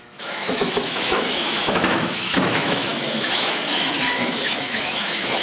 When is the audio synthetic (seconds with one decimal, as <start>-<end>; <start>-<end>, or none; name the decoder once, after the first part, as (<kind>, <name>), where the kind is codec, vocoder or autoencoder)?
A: 0.0-5.4 (autoencoder, DAC-VAE)